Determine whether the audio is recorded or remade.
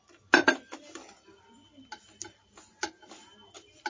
recorded